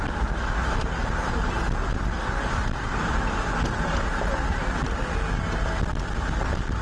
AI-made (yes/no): no